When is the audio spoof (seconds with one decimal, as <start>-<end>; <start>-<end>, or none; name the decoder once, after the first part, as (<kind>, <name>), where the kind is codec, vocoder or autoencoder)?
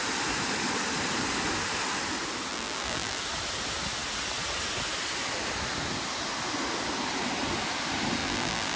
2.5-3.2 (vocoder, BigVGAN v2); 8.2-8.8